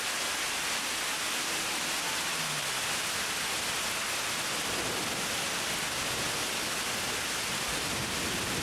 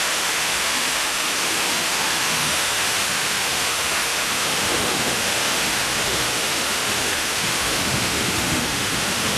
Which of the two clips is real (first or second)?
first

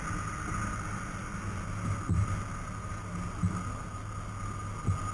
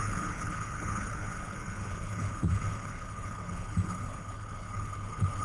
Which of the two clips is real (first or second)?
first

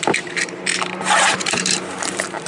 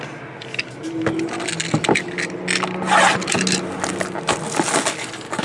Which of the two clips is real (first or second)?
second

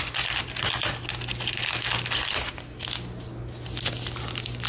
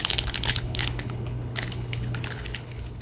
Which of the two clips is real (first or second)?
first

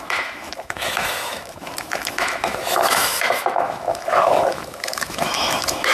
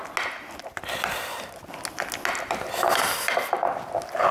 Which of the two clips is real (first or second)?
second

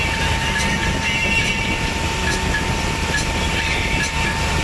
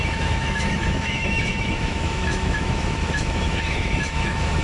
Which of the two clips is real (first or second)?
first